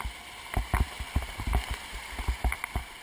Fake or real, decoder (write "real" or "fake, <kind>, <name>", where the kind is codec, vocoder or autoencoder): real